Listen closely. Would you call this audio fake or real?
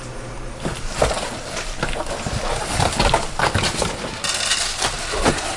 real